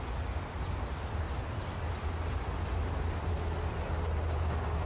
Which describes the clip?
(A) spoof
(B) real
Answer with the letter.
B